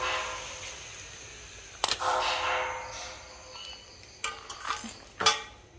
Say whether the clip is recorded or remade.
recorded